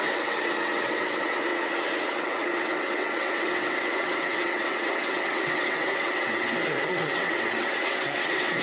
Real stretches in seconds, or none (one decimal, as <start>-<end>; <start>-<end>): none